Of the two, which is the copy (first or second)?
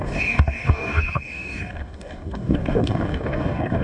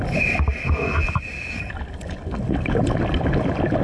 first